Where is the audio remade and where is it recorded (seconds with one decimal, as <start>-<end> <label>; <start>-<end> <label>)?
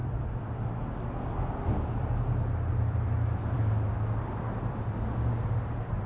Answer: 0.0-3.7 remade; 3.7-6.1 recorded